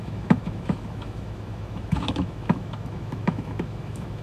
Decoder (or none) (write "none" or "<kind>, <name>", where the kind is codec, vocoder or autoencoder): autoencoder, DAC-VAE